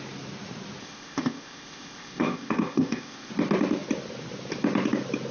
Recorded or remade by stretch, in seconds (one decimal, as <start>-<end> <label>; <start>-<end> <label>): 0.0-0.8 recorded; 0.8-3.3 remade; 3.3-5.3 recorded